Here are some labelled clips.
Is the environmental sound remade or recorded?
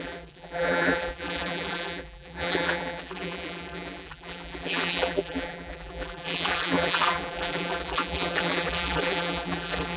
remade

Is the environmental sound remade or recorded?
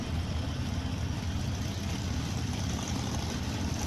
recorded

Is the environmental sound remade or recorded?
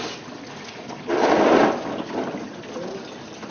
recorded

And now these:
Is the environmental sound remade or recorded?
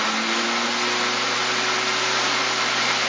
recorded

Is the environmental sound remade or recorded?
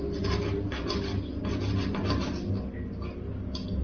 recorded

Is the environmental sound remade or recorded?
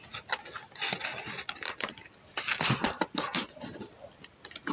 recorded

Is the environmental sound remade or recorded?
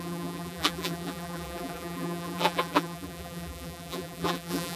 remade